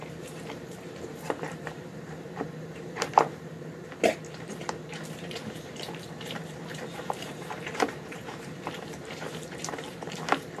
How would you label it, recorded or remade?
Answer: remade